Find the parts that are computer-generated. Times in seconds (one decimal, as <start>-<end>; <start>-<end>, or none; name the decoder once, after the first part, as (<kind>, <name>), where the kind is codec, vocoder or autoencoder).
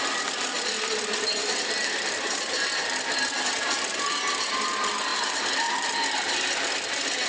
1.8-2.4 (vocoder, BigVGAN v2)